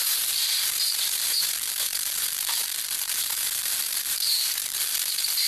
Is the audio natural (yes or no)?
no